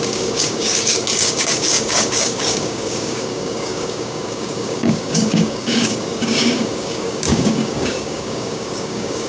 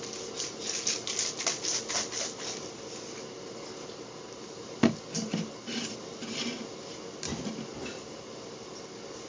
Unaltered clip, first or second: second